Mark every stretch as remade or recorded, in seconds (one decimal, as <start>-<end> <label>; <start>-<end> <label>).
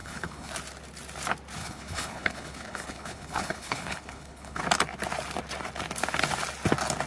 0.0-0.5 remade; 0.5-1.6 recorded; 1.6-4.6 remade; 4.6-7.1 recorded